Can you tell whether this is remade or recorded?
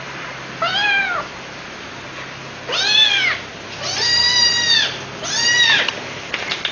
recorded